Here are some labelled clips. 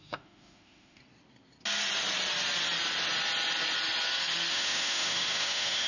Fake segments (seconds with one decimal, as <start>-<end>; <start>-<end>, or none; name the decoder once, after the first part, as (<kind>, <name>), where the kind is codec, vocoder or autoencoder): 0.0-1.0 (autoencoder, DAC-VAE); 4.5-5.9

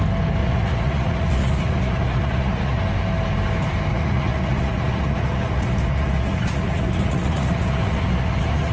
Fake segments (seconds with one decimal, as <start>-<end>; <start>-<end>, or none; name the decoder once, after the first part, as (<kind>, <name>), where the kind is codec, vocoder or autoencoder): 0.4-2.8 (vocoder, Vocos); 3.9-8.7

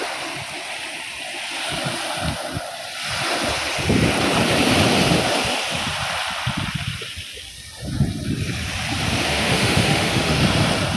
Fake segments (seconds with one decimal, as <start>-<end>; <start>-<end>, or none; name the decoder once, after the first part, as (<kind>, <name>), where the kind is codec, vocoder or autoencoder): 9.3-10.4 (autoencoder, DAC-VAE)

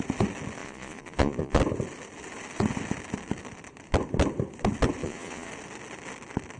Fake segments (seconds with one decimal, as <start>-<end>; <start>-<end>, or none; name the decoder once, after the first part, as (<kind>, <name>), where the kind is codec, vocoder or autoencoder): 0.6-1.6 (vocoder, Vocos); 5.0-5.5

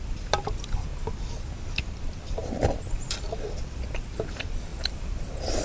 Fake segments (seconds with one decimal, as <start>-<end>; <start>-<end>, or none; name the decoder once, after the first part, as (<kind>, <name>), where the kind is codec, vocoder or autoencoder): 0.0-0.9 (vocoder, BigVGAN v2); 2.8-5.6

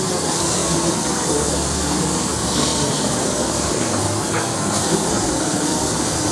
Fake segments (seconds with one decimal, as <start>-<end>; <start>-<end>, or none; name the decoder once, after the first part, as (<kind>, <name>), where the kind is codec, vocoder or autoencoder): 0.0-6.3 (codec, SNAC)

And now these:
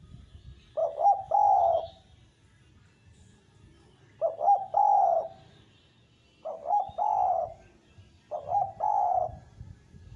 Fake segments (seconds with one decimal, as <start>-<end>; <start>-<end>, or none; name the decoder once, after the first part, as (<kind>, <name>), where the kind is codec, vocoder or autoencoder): 0.8-1.9 (autoencoder, DAC-VAE)